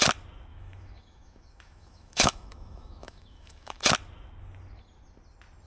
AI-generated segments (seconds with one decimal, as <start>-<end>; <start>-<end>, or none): 0.5-3.8